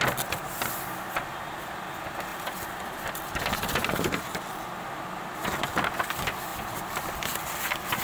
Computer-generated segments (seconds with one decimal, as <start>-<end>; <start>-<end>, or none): 2.3-4.6; 6.5-8.0